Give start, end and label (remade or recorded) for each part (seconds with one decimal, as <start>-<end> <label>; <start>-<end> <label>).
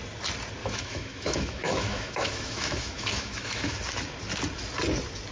0.0-0.6 recorded; 0.6-3.8 remade; 3.8-5.3 recorded